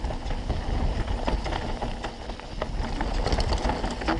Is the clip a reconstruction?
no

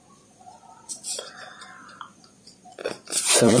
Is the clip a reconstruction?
yes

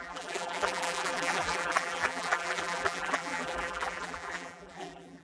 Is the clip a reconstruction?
yes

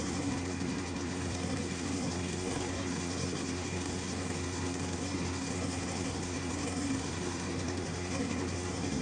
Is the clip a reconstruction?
yes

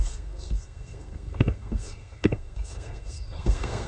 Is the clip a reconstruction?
yes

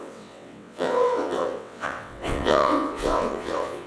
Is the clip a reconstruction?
yes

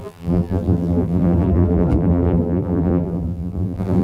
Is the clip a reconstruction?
yes